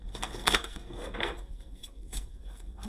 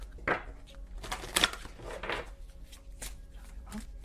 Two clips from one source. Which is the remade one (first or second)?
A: first